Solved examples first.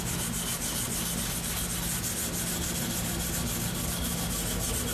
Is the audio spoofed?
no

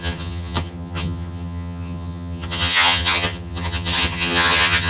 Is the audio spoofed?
yes